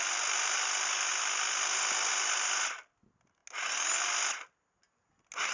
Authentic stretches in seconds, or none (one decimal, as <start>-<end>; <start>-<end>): 0.0-5.5